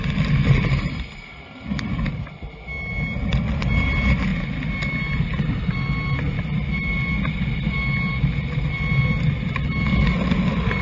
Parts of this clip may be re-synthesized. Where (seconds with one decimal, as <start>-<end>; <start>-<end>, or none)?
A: none